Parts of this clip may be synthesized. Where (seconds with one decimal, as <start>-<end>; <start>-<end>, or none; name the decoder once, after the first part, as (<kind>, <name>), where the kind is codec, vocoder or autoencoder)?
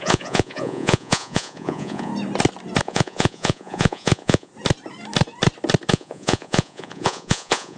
0.0-2.1 (vocoder, Vocos); 2.8-4.5; 5.9-7.8